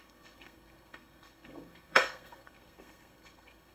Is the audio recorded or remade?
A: remade